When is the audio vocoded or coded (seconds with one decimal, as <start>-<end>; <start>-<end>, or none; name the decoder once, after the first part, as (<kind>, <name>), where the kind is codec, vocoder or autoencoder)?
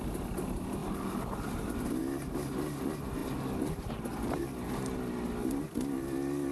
none